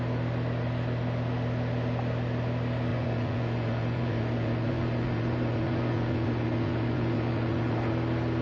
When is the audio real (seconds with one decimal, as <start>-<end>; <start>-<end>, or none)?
0.0-2.9; 7.9-8.4